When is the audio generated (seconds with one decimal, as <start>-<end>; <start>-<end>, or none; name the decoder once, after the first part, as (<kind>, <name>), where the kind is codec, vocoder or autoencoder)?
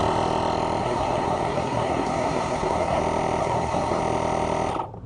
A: 0.8-3.0 (codec, SNAC); 3.4-4.0